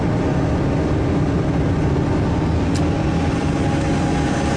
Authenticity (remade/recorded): recorded